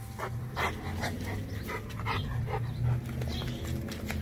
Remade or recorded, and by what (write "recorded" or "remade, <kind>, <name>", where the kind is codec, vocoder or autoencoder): recorded